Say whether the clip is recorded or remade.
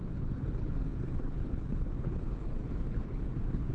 remade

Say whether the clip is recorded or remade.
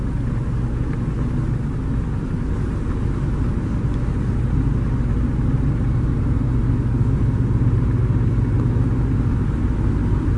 recorded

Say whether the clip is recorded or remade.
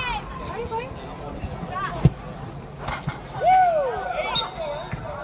recorded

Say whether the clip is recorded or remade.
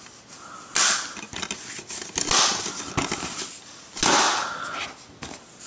recorded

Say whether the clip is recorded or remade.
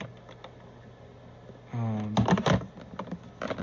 recorded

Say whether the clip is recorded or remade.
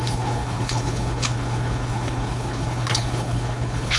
remade